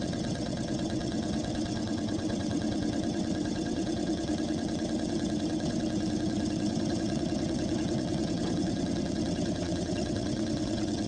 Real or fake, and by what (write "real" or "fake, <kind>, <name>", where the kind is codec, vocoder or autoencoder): fake, vocoder, WaveNeXt